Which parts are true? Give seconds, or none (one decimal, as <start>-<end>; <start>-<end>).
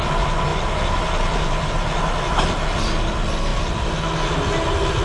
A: 0.0-5.0